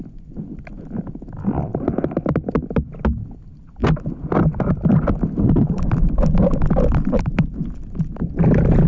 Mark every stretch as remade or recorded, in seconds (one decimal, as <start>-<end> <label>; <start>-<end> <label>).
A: 0.0-8.9 recorded